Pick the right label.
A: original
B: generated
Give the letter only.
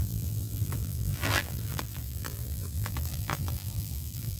B